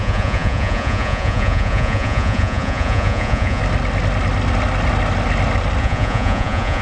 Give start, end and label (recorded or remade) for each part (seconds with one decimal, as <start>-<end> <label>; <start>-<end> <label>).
0.0-3.6 remade; 3.6-5.8 recorded; 5.8-6.8 remade